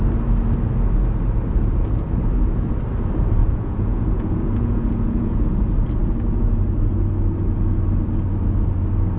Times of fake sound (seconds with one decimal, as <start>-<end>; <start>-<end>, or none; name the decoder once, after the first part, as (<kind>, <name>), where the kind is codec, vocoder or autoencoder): 3.4-5.4 (vocoder, Vocos)